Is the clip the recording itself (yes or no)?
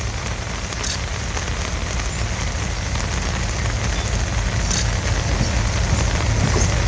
yes